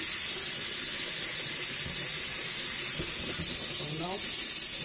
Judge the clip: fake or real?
real